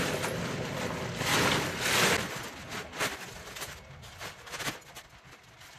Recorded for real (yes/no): yes